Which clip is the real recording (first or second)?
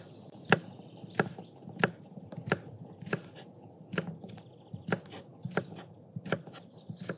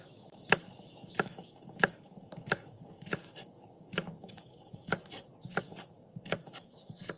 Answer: first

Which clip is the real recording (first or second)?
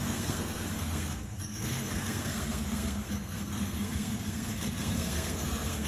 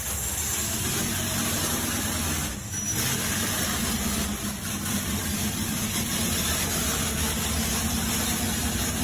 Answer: second